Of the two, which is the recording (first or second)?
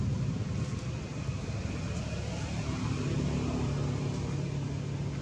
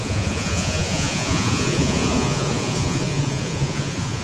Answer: first